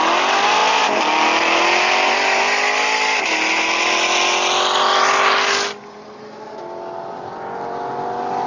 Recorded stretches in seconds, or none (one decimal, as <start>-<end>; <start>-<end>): 0.0-8.5

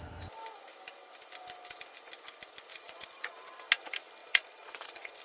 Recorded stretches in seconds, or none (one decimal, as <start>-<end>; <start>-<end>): 0.0-2.7; 3.3-4.2

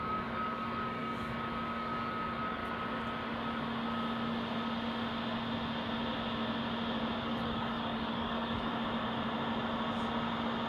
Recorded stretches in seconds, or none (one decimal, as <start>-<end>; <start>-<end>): 2.6-7.2; 8.7-10.7